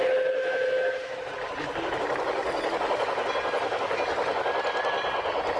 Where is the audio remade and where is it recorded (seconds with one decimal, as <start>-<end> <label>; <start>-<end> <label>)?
0.0-0.4 recorded; 0.4-1.3 remade; 1.3-5.6 recorded